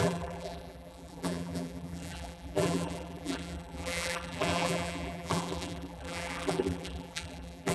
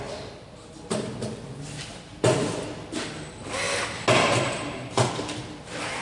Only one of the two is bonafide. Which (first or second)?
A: second